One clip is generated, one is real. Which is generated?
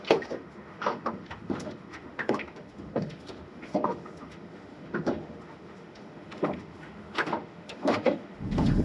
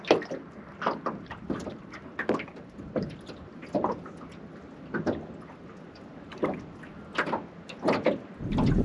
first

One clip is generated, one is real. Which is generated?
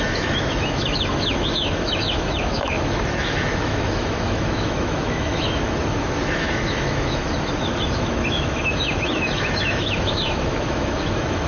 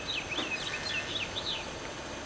first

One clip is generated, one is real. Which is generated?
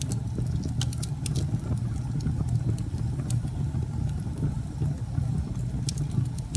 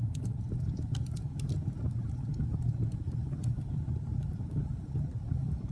second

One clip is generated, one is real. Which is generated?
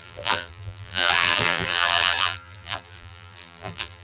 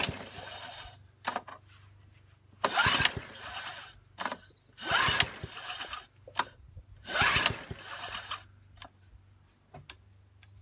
first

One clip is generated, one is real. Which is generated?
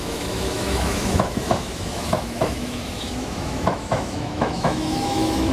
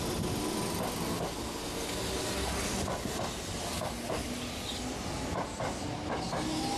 first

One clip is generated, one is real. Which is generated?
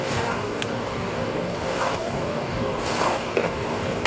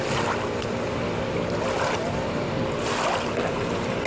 first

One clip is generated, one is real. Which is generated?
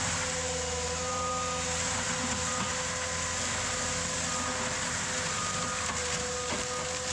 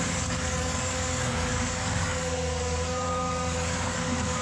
second